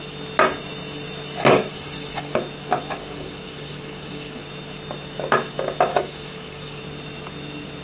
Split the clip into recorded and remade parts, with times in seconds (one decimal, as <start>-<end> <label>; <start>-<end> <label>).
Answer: 0.0-1.7 recorded; 1.7-2.4 remade; 2.4-3.0 recorded; 3.0-4.4 remade; 4.4-5.9 recorded; 5.9-6.8 remade; 6.8-7.8 recorded